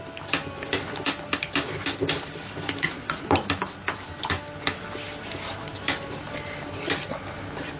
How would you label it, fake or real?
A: real